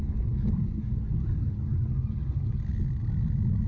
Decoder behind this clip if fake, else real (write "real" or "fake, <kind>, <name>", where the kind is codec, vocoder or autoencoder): real